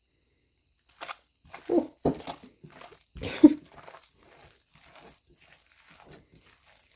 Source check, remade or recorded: recorded